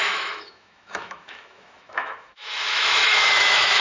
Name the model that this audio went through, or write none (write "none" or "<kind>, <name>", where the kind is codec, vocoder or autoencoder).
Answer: autoencoder, DAC-VAE